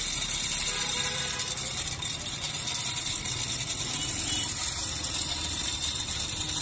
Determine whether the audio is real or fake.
real